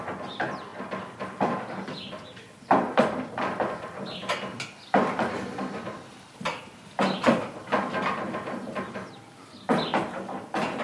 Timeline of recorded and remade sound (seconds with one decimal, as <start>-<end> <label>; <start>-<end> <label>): 0.0-10.8 recorded